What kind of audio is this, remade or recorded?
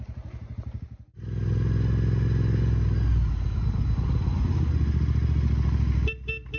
recorded